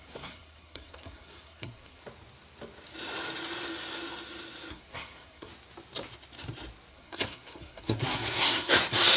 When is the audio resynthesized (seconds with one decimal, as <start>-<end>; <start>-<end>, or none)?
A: 0.0-2.0; 4.7-5.5; 6.9-9.2